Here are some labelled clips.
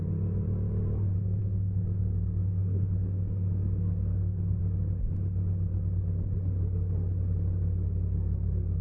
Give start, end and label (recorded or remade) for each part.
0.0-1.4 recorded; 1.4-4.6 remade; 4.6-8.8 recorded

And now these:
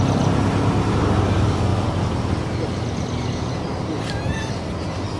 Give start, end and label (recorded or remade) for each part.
0.0-5.2 recorded

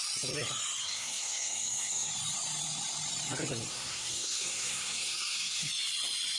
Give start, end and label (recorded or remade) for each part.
0.0-0.8 recorded; 0.8-2.1 remade; 2.1-3.7 recorded; 3.7-5.7 remade; 5.7-6.4 recorded

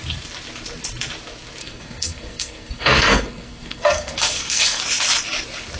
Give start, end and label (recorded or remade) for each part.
0.0-1.6 recorded; 1.6-4.8 remade; 4.8-5.8 recorded

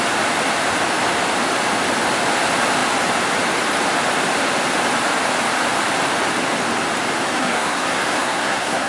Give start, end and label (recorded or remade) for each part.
0.0-7.3 recorded; 7.3-8.9 remade

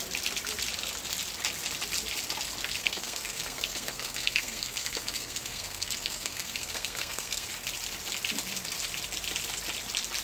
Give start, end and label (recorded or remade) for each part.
0.0-2.8 recorded; 2.8-7.5 remade; 7.5-10.2 recorded

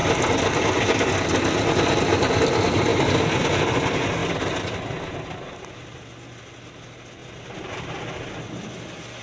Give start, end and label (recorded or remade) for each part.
0.0-9.2 recorded

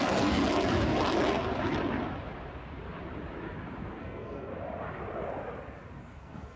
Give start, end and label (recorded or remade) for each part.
0.0-0.4 remade; 0.4-4.0 recorded; 4.0-4.5 remade; 4.5-6.0 recorded; 6.0-6.6 remade